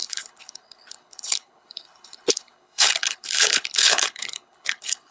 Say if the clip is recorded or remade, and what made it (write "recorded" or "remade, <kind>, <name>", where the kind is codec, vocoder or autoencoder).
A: remade, codec, HILCodec